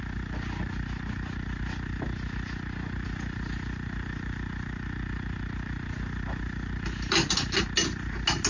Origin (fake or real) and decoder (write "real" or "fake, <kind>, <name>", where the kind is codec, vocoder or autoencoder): real